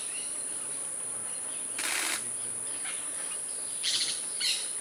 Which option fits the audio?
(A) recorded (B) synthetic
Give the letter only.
A